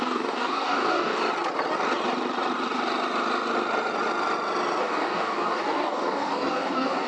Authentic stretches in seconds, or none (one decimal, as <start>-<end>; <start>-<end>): 1.2-4.8